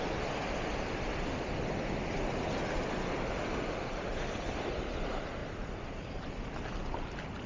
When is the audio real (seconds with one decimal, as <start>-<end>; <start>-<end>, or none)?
0.0-7.5